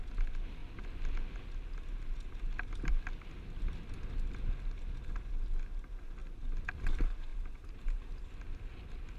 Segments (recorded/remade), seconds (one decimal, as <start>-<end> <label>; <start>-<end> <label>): 0.0-7.3 recorded; 7.3-8.1 remade; 8.1-9.2 recorded